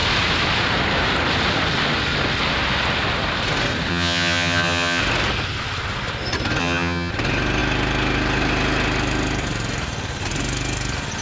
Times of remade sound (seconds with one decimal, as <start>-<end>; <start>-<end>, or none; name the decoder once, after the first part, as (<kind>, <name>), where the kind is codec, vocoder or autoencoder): 3.9-5.0 (vocoder, HiFi-GAN); 6.6-7.1